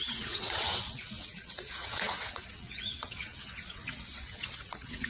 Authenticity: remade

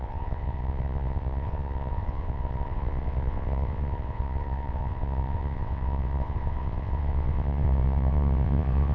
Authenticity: remade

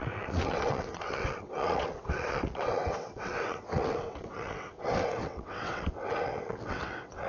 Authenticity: remade